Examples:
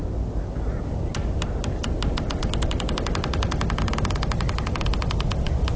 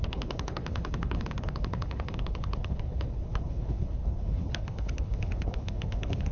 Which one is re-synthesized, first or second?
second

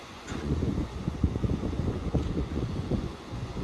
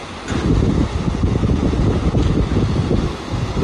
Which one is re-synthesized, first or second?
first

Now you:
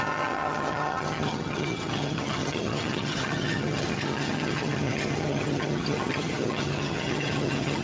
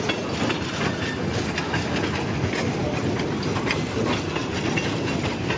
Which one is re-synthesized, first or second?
first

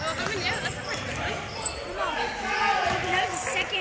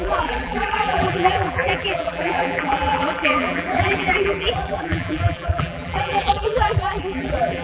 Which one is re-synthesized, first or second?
second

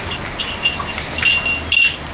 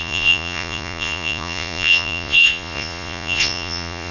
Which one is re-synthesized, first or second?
second